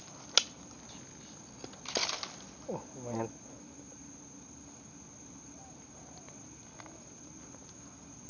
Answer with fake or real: real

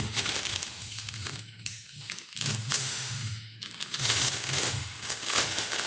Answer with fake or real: fake